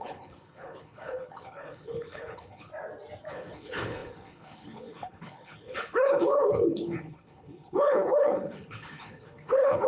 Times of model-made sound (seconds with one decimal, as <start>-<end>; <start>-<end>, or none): 0.0-2.7; 3.3-9.9